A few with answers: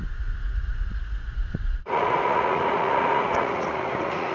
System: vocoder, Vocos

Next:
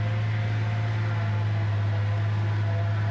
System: none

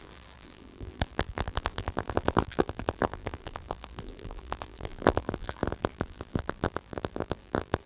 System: vocoder, BigVGAN v2